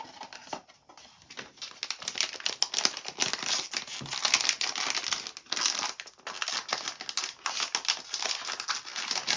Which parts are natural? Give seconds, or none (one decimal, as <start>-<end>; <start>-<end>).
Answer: 0.0-9.4